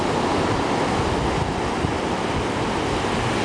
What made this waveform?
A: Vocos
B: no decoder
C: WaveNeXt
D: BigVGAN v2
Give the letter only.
B